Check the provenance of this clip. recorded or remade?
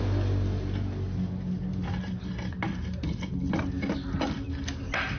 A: recorded